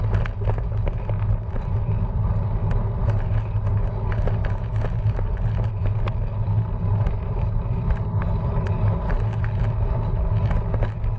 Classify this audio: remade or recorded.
recorded